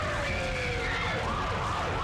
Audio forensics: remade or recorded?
recorded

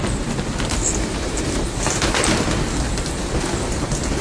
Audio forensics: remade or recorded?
recorded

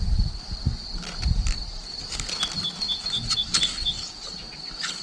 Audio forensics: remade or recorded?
recorded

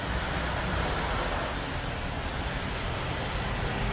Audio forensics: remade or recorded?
recorded